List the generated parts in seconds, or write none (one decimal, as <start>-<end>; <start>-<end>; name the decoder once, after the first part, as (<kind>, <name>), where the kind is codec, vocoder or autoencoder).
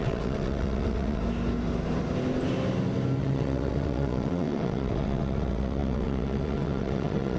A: 0.0-1.2 (vocoder, WaveNeXt); 3.2-7.4